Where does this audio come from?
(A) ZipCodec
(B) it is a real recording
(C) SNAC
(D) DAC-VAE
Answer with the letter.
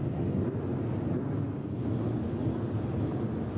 B